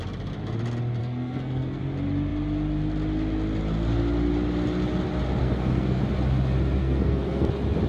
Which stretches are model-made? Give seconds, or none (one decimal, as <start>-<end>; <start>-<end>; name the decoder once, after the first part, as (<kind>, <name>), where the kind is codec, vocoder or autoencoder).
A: 1.0-1.8 (codec, SNAC); 5.4-6.0; 6.8-7.5